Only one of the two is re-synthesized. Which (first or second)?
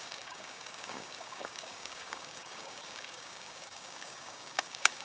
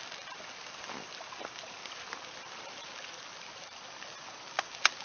first